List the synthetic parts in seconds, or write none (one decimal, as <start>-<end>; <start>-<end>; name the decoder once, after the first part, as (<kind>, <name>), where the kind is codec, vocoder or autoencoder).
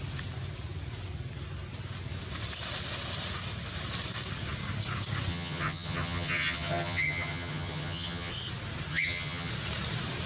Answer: 5.3-8.3 (vocoder, HiFi-GAN); 8.9-9.5